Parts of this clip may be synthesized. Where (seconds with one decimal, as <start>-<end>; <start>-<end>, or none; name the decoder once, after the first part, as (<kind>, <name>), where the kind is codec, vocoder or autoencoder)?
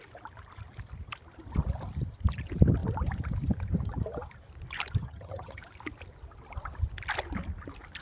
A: 5.0-5.6 (vocoder, HiFi-GAN)